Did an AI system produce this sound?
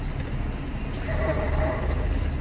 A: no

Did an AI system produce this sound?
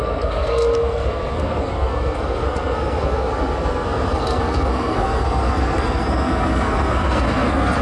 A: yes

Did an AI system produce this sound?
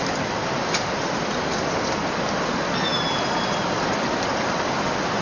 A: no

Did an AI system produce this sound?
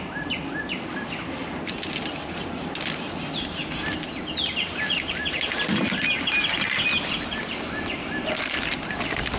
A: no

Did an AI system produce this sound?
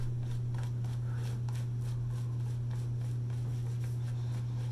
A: no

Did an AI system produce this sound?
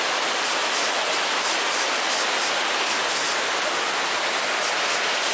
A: no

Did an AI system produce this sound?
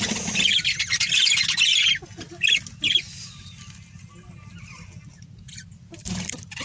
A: no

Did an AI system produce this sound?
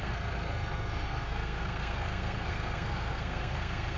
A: yes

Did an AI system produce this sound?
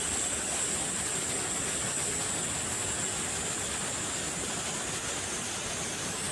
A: no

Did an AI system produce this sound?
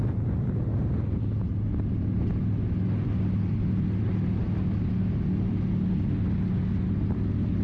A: no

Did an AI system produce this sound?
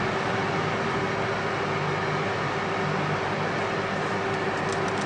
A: no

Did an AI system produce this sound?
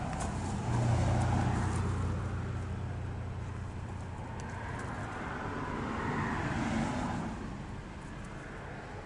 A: no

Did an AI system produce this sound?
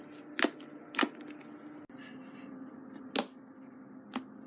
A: no